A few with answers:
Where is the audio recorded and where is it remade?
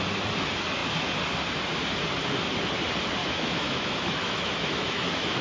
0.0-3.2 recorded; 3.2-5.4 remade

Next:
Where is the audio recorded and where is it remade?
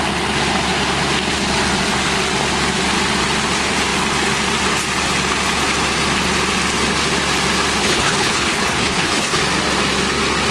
0.0-7.8 recorded; 7.8-9.4 remade; 9.4-10.5 recorded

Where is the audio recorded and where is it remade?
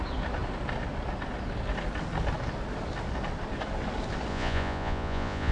0.0-4.3 recorded; 4.3-5.5 remade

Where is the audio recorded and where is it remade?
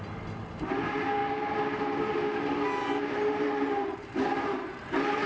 0.0-1.2 remade; 1.2-3.1 recorded; 3.1-5.3 remade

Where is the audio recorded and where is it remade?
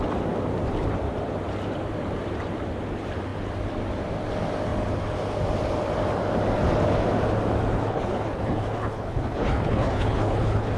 0.0-7.8 recorded; 7.8-10.8 remade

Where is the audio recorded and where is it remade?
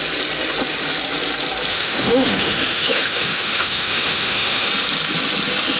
0.0-1.7 recorded; 1.7-4.7 remade; 4.7-5.8 recorded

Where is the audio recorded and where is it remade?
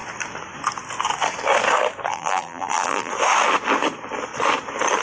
0.0-2.1 recorded; 2.1-3.1 remade; 3.1-5.0 recorded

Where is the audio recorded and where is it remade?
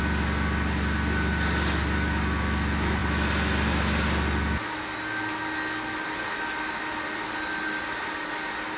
0.0-8.8 recorded